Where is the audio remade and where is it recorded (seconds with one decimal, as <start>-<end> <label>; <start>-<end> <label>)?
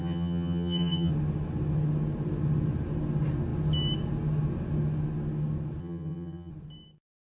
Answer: 0.0-1.1 remade; 1.1-5.8 recorded; 5.8-6.5 remade; 6.5-7.4 recorded